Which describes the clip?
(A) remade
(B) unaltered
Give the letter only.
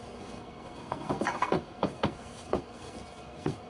A